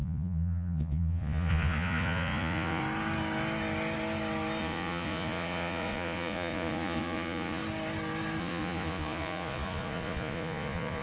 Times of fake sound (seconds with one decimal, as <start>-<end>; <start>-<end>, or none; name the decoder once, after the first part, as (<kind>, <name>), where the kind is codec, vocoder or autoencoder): 0.0-2.8 (vocoder, Vocos); 4.6-7.6; 8.4-11.0